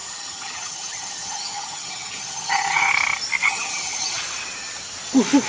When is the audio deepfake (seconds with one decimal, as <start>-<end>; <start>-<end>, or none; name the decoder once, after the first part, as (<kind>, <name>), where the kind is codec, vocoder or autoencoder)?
0.0-2.9 (vocoder, HiFi-GAN); 3.4-4.2